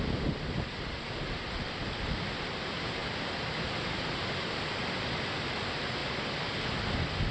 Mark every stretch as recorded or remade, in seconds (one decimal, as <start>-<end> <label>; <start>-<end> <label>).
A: 0.0-7.3 recorded